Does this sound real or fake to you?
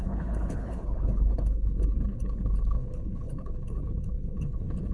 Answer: fake